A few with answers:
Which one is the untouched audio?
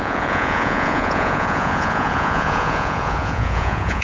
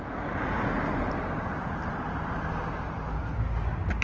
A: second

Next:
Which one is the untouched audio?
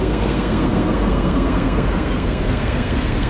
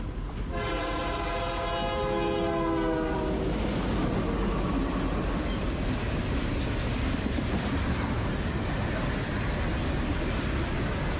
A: second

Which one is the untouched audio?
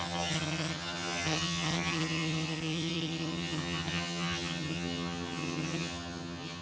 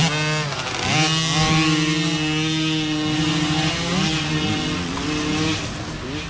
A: second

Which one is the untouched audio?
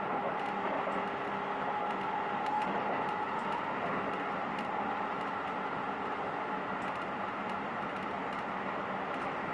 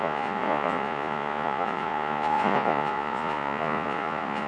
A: first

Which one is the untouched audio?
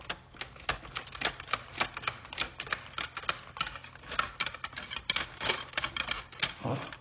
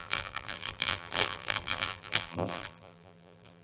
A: first